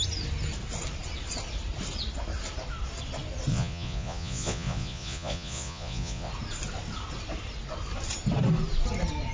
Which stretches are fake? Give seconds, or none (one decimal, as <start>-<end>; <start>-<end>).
3.5-6.3